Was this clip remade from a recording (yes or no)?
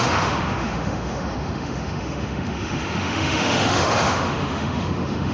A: yes